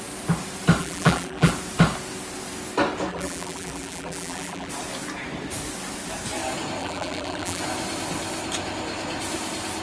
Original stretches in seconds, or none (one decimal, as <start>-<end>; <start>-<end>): 0.0-0.8; 1.5-3.1; 4.7-6.8; 7.6-9.8